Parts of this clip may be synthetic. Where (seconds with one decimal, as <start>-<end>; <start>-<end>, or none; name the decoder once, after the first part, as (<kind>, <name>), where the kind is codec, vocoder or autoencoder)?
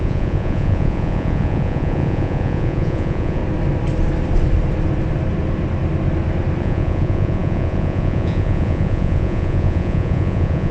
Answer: 0.0-3.4 (vocoder, Vocos); 6.6-10.7